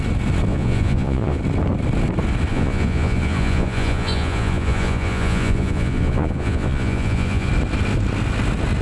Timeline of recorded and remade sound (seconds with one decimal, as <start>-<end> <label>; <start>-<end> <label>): 0.0-0.5 recorded; 0.5-1.4 remade; 1.4-2.5 recorded; 2.5-7.5 remade; 7.5-8.8 recorded

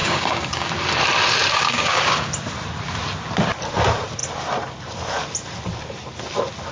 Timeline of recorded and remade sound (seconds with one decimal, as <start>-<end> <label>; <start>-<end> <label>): 0.0-0.7 remade; 0.7-1.5 recorded; 1.5-2.3 remade; 2.3-6.7 recorded